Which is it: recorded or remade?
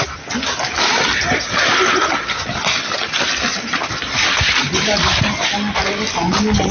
recorded